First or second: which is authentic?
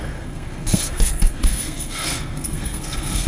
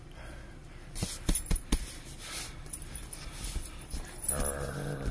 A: second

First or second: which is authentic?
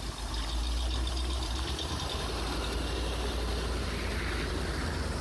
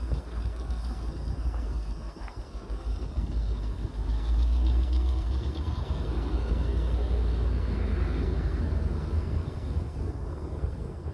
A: first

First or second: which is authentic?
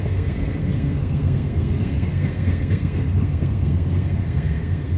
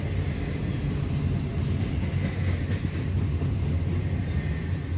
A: second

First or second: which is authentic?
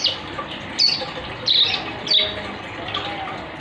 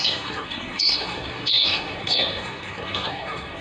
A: first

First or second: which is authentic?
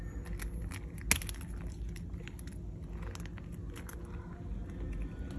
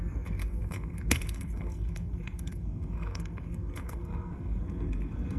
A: first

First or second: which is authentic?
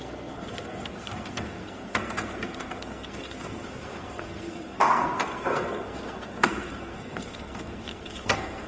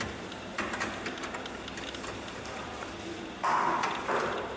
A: second